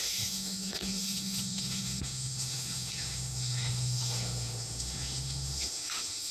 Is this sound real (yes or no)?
no